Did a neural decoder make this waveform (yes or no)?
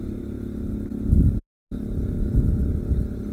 no